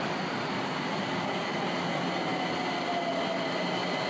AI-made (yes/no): no